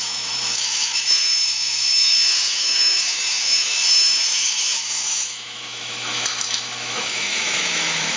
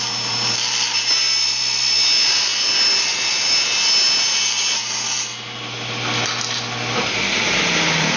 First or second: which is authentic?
second